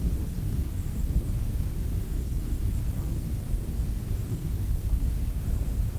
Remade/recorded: remade